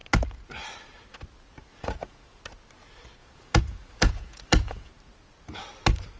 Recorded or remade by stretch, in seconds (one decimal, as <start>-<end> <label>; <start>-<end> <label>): 0.0-1.7 recorded; 1.7-2.4 remade; 2.4-3.2 recorded; 3.2-4.9 remade; 4.9-6.2 recorded